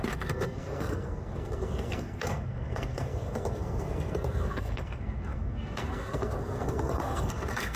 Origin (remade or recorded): remade